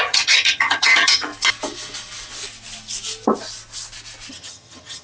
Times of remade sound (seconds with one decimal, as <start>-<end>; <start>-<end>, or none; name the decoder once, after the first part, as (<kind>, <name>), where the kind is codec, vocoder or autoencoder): 0.0-1.3 (vocoder, HiFi-GAN); 4.3-5.0